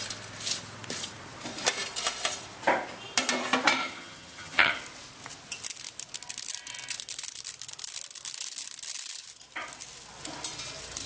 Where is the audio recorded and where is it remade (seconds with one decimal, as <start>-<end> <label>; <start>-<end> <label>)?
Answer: 0.0-3.8 recorded; 3.8-4.7 remade; 4.7-11.1 recorded

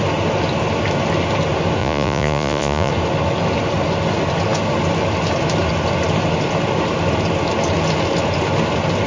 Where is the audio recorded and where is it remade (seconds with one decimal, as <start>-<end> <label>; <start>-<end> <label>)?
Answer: 0.0-1.8 recorded; 1.8-2.9 remade; 2.9-9.1 recorded

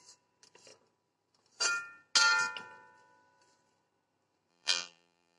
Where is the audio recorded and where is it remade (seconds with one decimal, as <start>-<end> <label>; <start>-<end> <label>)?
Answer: 0.0-4.5 recorded; 4.5-5.4 remade

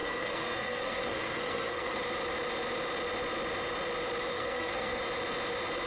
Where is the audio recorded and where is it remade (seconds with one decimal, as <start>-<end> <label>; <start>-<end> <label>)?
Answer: 0.0-2.0 remade; 2.0-4.3 recorded; 4.3-5.0 remade; 5.0-5.9 recorded

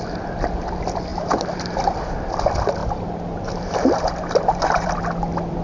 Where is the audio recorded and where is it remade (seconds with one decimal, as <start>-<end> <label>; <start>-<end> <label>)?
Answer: 0.0-1.1 recorded; 1.1-2.3 remade; 2.3-2.8 recorded; 2.8-4.9 remade; 4.9-5.6 recorded